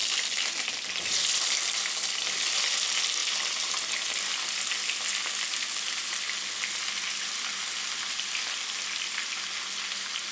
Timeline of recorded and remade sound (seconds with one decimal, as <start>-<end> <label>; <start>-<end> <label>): 0.0-10.3 recorded